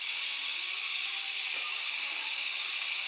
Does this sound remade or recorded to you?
remade